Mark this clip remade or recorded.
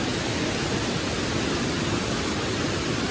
recorded